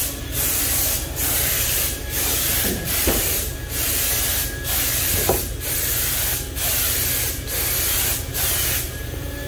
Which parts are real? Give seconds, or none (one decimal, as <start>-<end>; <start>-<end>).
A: 0.0-0.8; 4.1-8.3